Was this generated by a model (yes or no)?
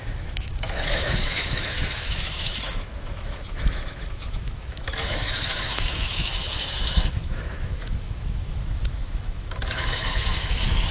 yes